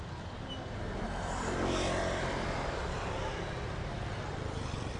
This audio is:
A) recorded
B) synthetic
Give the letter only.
A